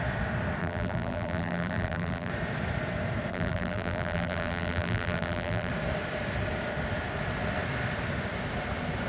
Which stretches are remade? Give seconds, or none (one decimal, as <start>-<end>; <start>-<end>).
0.6-2.3; 3.3-5.7